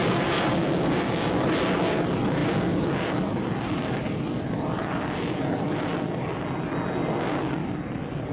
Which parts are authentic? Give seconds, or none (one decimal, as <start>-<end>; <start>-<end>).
0.0-0.6; 1.3-8.3

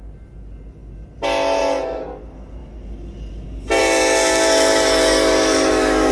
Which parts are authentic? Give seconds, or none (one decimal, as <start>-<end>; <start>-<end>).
0.0-4.7

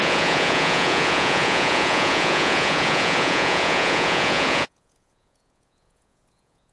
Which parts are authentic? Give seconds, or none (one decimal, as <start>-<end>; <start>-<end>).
none

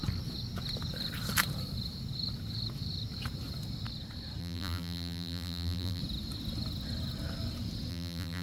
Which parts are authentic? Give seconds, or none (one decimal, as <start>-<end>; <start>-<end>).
0.0-4.4; 6.0-7.9

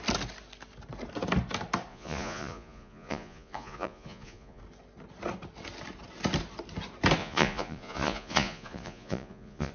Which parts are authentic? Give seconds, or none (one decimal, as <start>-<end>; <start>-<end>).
0.0-1.9; 4.6-7.2

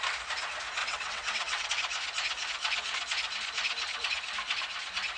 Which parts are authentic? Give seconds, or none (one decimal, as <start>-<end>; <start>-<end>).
0.0-0.8; 1.7-5.2

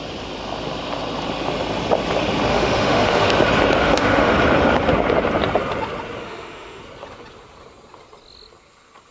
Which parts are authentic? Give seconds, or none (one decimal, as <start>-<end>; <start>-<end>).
0.0-2.5; 3.3-3.8; 4.3-6.2; 6.8-9.1

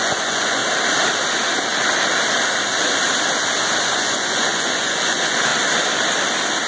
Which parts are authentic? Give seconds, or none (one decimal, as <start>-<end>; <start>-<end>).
0.6-3.8; 5.5-6.7